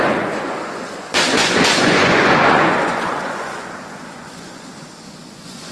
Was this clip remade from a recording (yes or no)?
yes